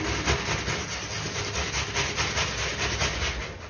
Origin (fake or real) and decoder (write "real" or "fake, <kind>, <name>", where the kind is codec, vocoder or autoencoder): real